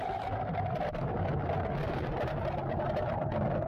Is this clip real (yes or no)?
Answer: yes